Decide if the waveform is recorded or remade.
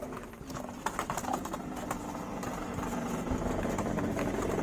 recorded